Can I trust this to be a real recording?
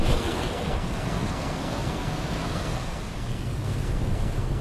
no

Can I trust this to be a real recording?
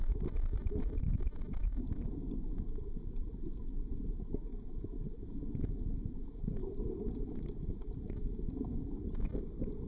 no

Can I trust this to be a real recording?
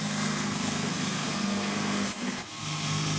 no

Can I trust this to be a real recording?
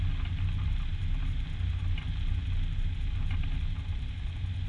yes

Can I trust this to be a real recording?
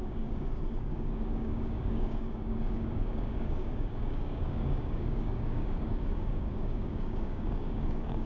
no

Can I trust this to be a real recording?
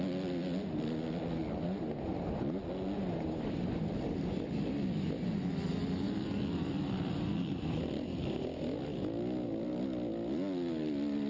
yes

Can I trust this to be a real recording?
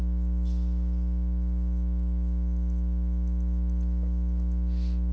yes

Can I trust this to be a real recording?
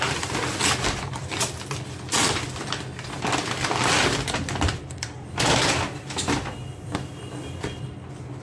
no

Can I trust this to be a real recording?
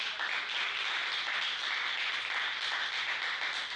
yes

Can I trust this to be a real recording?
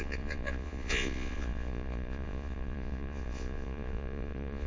no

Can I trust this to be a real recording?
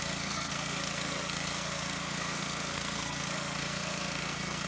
no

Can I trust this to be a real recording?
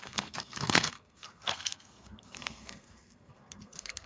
no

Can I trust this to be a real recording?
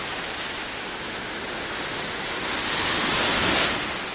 yes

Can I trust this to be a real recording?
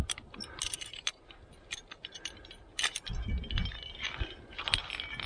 yes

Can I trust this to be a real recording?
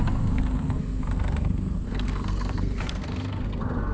no